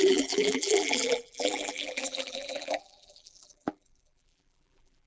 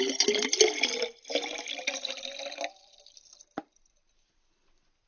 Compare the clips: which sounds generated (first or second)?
first